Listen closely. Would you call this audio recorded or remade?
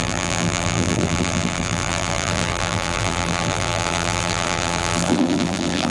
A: remade